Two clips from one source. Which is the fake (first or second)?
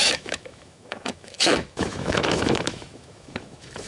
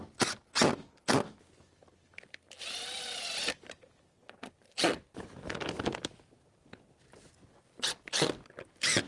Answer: first